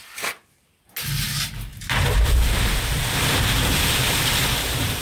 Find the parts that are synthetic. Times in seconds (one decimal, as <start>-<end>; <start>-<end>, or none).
1.7-5.0